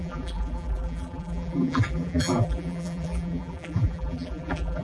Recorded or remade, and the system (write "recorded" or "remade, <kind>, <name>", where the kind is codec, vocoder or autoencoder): remade, vocoder, BigVGAN v2